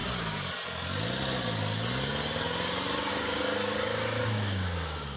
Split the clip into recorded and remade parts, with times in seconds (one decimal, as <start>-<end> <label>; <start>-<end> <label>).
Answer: 0.0-3.1 recorded; 3.1-5.2 remade